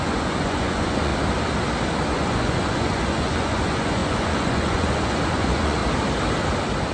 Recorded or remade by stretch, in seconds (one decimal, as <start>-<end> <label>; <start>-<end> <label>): 0.0-1.1 remade; 1.1-2.1 recorded; 2.1-5.8 remade; 5.8-6.9 recorded